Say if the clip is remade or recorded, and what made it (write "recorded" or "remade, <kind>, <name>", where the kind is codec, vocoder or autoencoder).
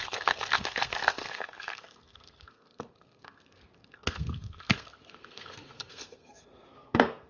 remade, codec, SNAC